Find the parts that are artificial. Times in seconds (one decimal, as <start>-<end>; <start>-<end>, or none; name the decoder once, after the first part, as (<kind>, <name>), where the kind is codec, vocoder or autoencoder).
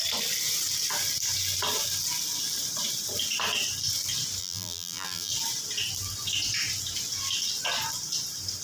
4.4-5.3 (vocoder, BigVGAN v2)